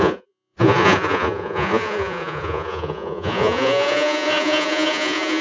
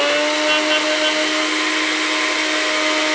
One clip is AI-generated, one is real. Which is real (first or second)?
second